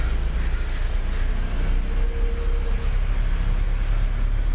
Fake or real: real